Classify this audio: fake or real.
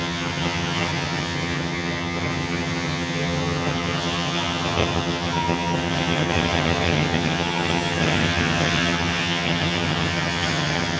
fake